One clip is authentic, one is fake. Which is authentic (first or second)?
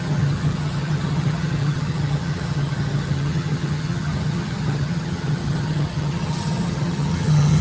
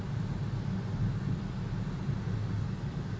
second